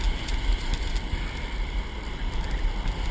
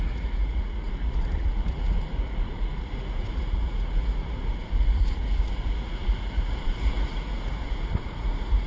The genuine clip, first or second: first